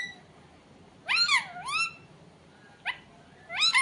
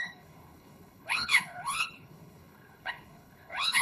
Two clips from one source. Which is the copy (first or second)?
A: second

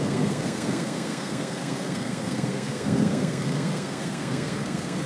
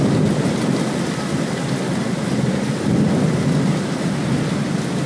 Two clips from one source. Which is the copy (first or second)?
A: first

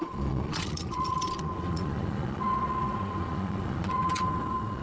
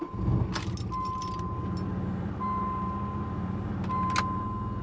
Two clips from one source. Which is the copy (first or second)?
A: first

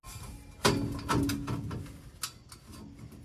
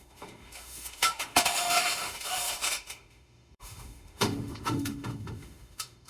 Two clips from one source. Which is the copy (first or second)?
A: second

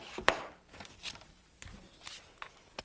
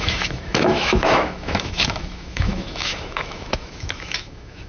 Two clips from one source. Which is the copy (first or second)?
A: second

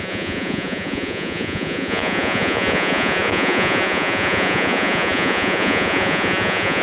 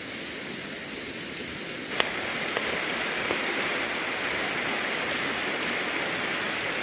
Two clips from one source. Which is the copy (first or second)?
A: first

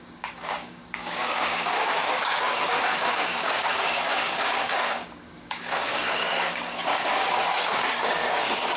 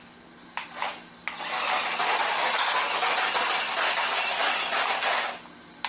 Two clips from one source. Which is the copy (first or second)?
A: first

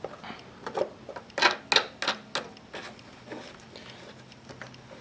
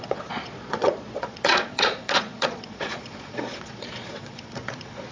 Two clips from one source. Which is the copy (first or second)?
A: second